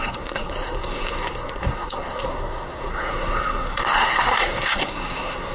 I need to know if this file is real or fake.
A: fake